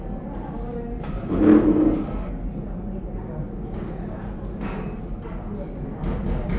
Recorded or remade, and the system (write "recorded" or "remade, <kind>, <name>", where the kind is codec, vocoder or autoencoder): recorded